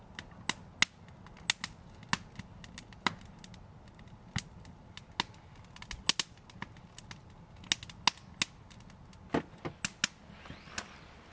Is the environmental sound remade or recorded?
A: recorded